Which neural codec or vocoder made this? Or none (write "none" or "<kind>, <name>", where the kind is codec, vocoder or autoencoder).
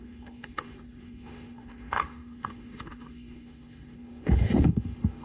autoencoder, DAC-VAE